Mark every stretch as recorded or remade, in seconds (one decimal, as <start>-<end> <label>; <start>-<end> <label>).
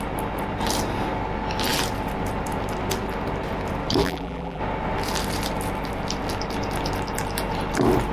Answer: 0.0-4.0 recorded; 4.0-4.6 remade; 4.6-8.1 recorded